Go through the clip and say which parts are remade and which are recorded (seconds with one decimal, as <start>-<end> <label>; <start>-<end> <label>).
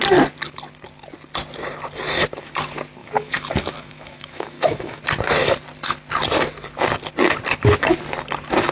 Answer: 0.0-3.0 recorded; 3.0-5.0 remade; 5.0-8.7 recorded